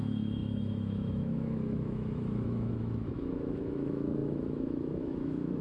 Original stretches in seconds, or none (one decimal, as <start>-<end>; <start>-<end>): none